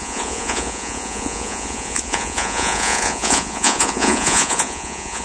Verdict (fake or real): fake